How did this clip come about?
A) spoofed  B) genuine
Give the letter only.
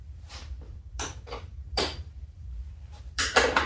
A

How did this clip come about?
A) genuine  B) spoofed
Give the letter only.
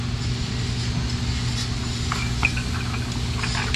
A